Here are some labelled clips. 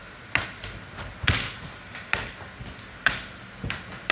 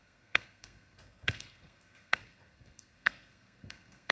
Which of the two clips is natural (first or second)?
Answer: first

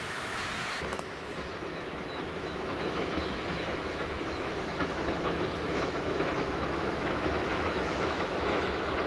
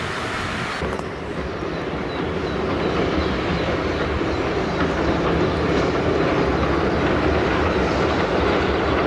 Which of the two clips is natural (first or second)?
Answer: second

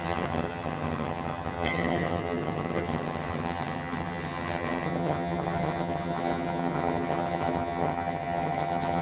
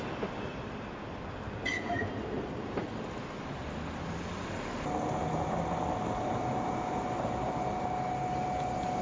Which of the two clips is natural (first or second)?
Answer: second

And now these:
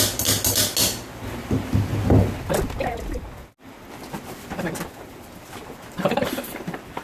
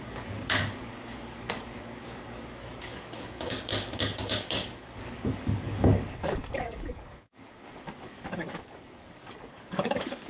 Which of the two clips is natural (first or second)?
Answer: first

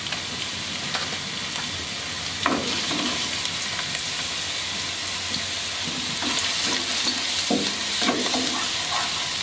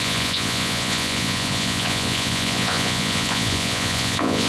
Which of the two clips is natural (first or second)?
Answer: first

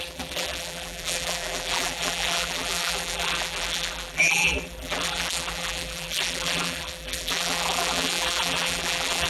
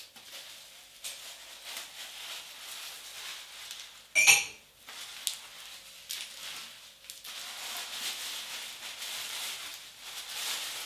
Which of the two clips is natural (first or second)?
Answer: second